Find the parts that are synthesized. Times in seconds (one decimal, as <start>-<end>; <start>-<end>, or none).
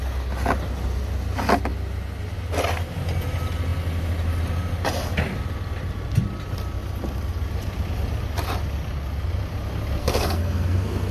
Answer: 10.0-11.1